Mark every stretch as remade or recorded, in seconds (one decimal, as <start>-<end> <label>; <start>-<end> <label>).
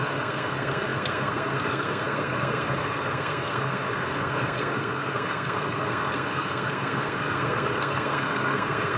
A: 0.0-9.0 remade